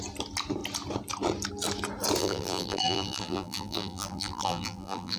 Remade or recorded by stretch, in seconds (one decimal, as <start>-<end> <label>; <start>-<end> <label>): 0.0-2.2 recorded; 2.2-5.2 remade